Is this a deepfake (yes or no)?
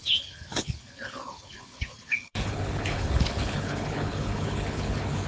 yes